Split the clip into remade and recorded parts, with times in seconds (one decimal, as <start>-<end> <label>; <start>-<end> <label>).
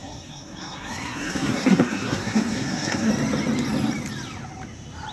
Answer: 0.0-3.1 remade; 3.1-5.1 recorded